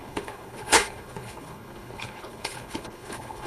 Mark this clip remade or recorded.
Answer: remade